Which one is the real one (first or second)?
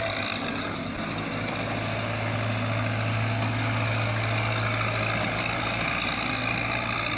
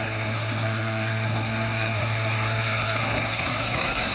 first